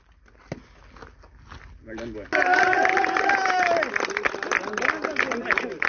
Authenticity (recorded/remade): recorded